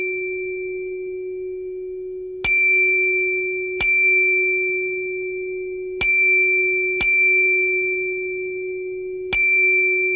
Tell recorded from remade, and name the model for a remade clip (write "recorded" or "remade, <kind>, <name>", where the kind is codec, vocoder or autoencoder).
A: recorded